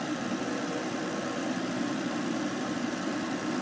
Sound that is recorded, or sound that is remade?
remade